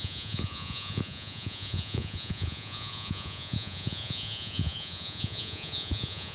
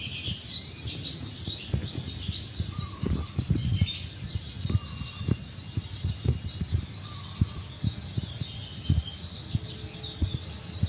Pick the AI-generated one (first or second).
first